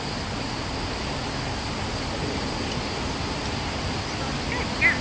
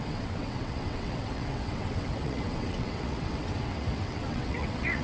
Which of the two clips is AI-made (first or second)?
second